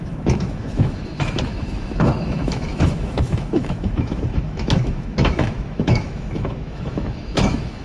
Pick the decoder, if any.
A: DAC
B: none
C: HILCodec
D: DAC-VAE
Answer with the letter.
D